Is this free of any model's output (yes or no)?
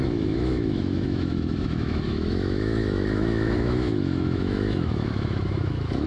no